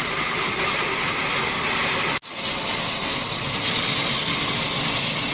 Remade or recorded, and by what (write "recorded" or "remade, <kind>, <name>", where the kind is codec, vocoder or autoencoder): recorded